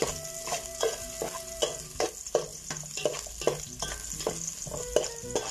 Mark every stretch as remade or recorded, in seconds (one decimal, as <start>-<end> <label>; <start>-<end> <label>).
0.0-5.5 recorded